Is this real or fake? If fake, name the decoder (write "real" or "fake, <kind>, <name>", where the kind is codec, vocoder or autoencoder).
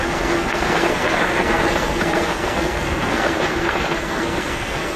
fake, codec, SNAC